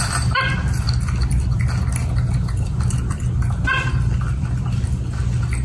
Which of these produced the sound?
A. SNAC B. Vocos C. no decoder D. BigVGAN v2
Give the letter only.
C